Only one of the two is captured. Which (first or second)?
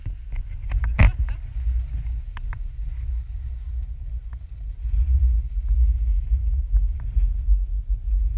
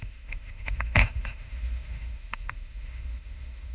first